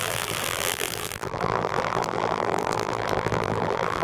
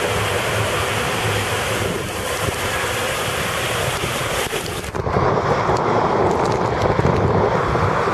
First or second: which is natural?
second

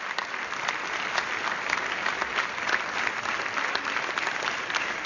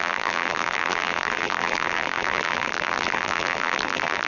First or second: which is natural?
first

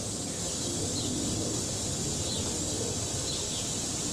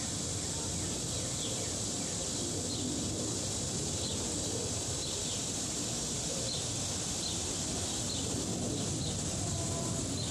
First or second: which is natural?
first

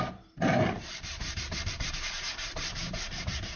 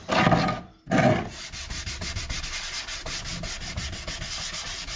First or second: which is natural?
second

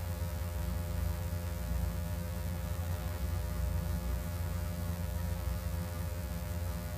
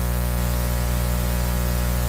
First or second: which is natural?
second